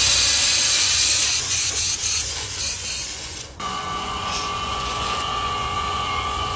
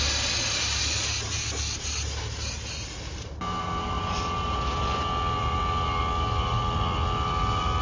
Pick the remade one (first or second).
first